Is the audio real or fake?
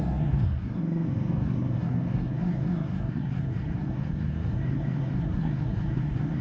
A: fake